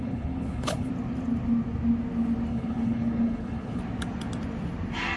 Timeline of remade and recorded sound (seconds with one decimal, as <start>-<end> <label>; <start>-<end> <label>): 0.0-0.9 remade; 0.9-2.5 recorded; 2.5-3.8 remade; 3.8-5.2 recorded